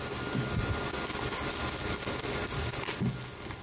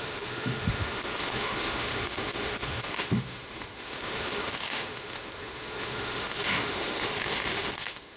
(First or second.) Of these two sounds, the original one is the first